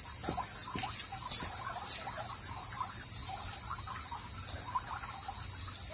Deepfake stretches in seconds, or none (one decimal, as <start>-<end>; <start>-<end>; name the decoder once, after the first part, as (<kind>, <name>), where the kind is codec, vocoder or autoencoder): none